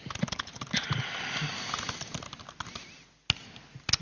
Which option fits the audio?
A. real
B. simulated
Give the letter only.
A